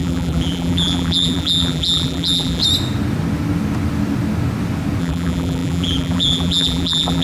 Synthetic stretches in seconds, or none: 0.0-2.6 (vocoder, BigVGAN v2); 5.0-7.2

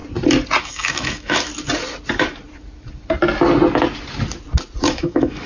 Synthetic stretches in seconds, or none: 0.6-1.5 (autoencoder, DAC-VAE); 4.8-5.5

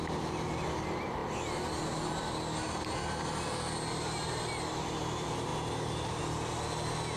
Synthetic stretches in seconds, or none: none

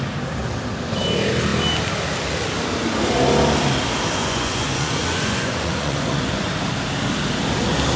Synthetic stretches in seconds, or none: 4.2-6.5 (vocoder, Vocos)

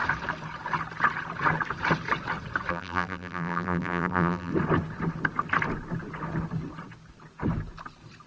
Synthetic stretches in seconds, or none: 2.7-4.5 (vocoder, BigVGAN v2)

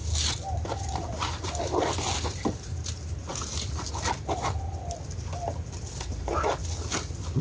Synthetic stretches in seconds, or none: none

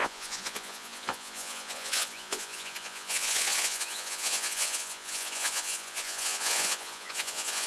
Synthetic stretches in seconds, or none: 0.0-7.7 (vocoder, Vocos)

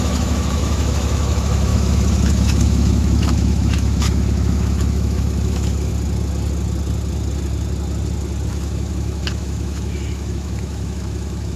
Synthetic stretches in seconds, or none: 0.0-5.9 (autoencoder, DAC-VAE); 8.5-11.6